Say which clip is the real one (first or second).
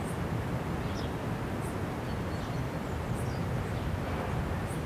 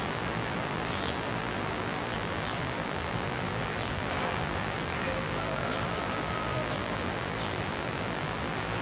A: first